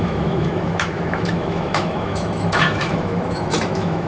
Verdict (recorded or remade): remade